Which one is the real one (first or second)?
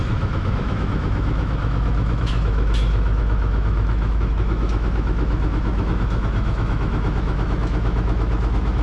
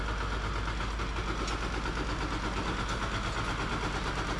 second